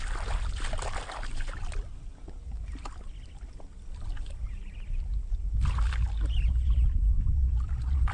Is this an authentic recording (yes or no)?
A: yes